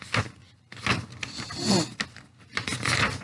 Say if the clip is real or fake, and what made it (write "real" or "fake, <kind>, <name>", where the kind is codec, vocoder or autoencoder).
real